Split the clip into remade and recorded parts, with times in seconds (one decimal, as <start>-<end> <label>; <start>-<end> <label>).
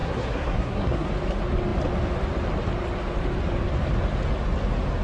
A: 0.0-1.1 remade; 1.1-5.0 recorded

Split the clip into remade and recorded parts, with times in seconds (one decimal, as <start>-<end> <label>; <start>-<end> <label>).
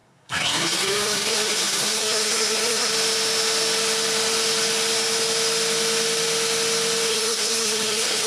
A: 0.0-2.9 remade; 2.9-7.1 recorded; 7.1-8.3 remade